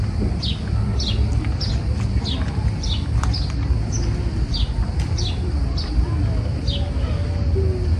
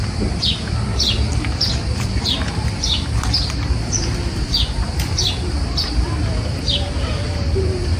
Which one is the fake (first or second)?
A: second